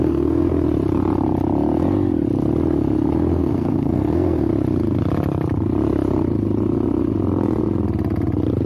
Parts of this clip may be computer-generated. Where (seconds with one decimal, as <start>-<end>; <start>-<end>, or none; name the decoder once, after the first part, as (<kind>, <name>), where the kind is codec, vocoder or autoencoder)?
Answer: 0.0-0.5 (codec, SNAC); 3.3-4.5